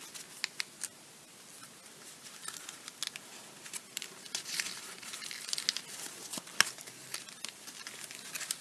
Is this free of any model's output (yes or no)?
yes